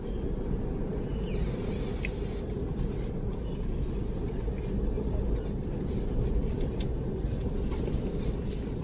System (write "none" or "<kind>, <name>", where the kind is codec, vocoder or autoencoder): none